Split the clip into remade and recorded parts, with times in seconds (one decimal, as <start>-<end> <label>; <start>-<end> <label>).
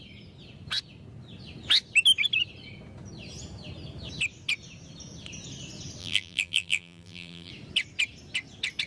0.0-6.0 recorded; 6.0-7.5 remade; 7.5-8.9 recorded